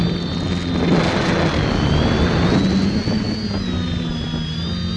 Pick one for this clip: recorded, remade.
recorded